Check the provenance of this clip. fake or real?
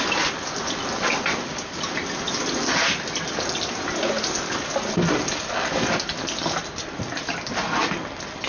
real